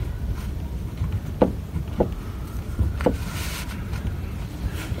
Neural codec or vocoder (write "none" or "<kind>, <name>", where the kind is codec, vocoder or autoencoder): none